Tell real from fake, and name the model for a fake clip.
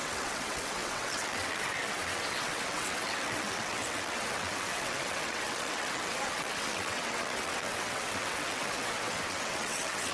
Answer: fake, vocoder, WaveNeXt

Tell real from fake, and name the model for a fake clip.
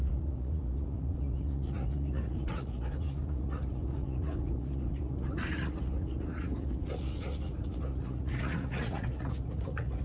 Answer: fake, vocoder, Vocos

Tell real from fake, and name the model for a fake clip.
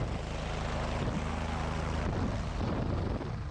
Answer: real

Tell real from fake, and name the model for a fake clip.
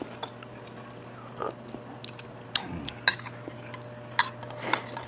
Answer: real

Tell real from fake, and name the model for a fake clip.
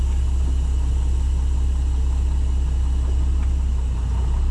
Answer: real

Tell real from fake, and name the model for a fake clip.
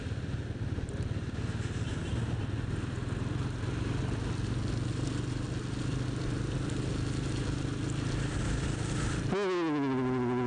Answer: real